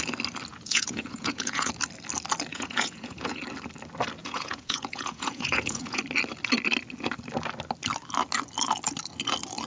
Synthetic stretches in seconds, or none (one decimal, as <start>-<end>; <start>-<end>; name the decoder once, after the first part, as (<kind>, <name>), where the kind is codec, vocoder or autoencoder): 0.5-1.7 (vocoder, Vocos); 2.5-3.4; 4.2-6.0